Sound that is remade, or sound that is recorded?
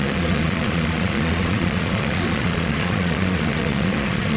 remade